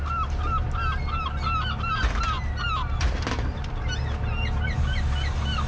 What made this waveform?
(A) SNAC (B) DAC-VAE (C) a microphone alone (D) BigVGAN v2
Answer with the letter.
C